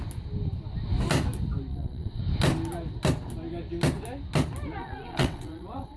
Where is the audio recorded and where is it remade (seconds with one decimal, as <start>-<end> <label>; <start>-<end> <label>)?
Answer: 0.0-1.7 recorded; 1.7-2.2 remade; 2.2-4.8 recorded; 4.8-6.0 remade